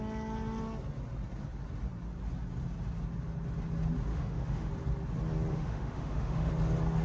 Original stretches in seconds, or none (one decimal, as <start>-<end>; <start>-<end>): 0.0-4.1; 4.7-5.5; 6.5-7.0